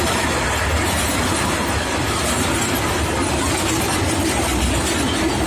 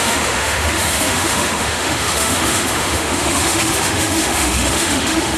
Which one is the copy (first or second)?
second